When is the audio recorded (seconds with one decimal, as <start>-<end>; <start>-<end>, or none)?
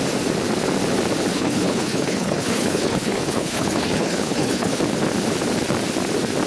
0.0-1.3; 4.8-6.5